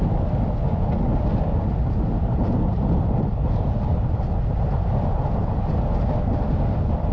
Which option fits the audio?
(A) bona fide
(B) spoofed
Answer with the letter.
A